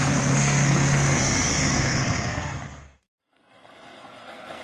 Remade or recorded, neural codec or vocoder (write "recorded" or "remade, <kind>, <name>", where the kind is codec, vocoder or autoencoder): remade, codec, SNAC